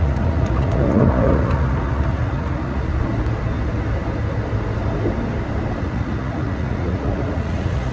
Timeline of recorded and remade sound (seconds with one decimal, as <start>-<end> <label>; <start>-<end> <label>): 0.0-2.9 remade; 2.9-5.8 recorded; 5.8-7.9 remade